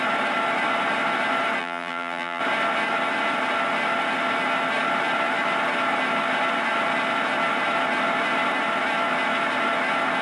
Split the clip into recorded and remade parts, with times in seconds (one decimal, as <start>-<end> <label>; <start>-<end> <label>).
0.0-1.6 recorded; 1.6-2.4 remade; 2.4-10.2 recorded